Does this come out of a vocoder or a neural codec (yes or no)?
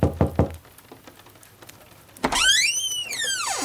no